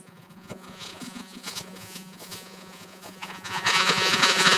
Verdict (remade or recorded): remade